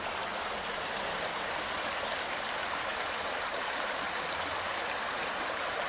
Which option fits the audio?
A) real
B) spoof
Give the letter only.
B